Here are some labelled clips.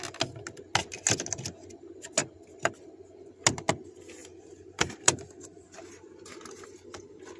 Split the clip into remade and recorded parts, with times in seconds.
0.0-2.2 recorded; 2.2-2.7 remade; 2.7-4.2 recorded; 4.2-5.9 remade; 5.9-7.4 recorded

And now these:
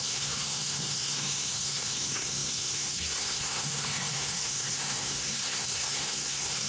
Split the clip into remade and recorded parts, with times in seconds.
0.0-6.7 remade

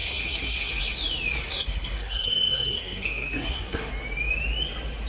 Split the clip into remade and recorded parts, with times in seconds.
0.0-0.7 remade; 0.7-1.5 recorded; 1.5-3.9 remade; 3.9-5.1 recorded

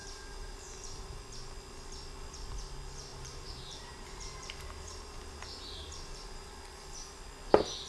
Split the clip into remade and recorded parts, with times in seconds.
0.0-1.2 remade; 1.2-3.1 recorded; 3.1-6.5 remade; 6.5-7.9 recorded

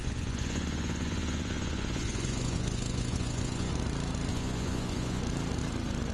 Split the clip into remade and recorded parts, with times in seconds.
0.0-3.7 remade; 3.7-4.3 recorded; 4.3-5.2 remade; 5.2-6.1 recorded

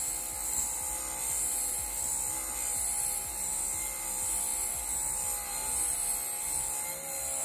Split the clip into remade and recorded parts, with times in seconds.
0.0-7.4 recorded

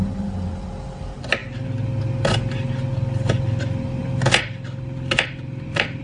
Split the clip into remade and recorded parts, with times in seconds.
0.0-6.0 recorded